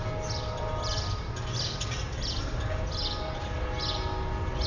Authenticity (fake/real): real